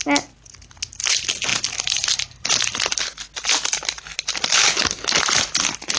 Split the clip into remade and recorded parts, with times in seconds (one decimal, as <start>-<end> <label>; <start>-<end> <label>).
0.0-6.0 recorded